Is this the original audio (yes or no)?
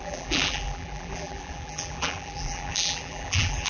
no